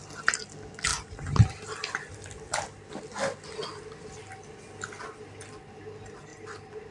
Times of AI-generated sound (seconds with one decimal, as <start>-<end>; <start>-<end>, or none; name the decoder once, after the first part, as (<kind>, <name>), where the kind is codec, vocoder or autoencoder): 0.9-2.9 (vocoder, BigVGAN v2)